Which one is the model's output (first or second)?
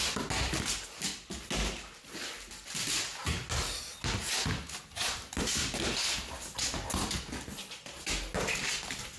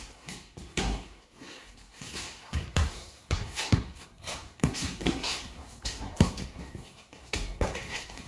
second